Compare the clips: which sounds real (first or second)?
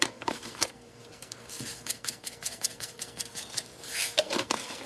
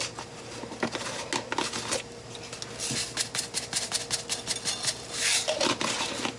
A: second